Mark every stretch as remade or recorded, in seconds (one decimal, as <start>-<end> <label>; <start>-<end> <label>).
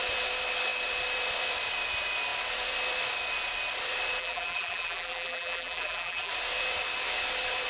0.0-4.2 recorded; 4.2-6.3 remade; 6.3-7.7 recorded